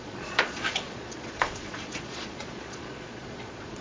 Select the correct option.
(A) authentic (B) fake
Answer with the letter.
B